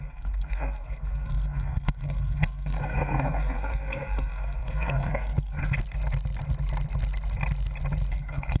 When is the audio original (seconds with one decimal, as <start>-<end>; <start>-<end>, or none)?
5.6-8.1